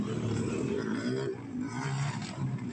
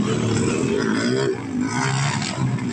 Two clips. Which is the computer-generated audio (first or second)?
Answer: first